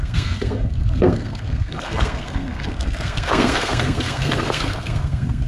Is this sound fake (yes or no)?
yes